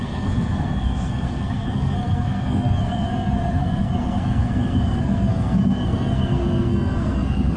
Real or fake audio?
fake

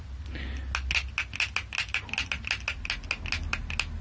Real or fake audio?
real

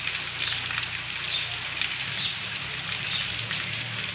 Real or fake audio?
real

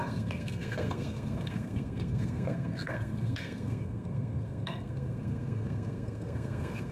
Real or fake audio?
fake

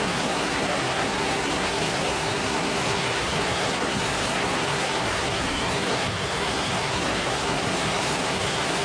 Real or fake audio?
fake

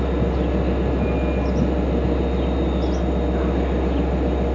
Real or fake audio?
real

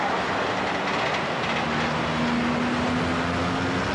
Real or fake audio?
real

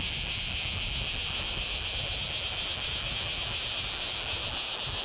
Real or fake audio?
real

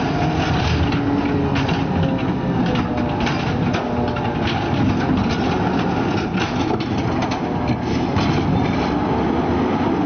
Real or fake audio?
real